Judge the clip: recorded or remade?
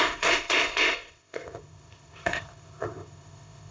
remade